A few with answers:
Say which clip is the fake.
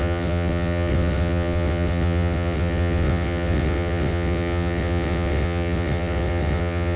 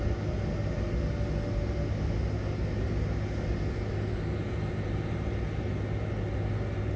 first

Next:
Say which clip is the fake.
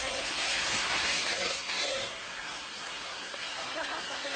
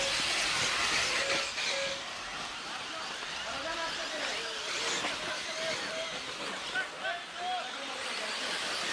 first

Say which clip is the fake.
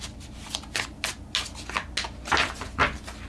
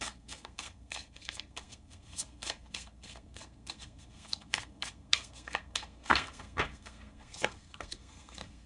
second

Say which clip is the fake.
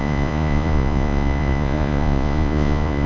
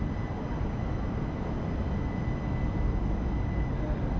first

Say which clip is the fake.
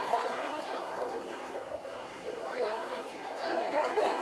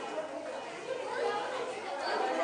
first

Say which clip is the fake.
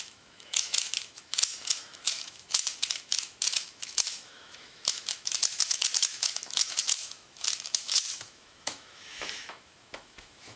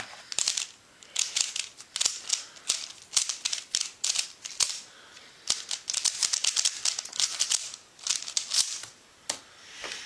first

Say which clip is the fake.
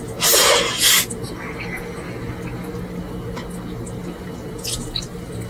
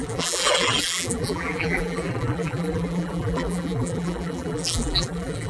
second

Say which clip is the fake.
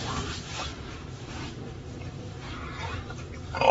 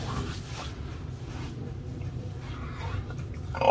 first